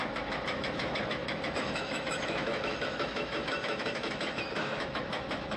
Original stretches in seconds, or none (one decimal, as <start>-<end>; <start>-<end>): none